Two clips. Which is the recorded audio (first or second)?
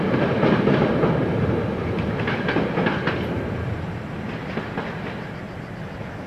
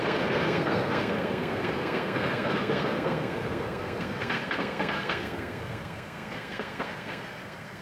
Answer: first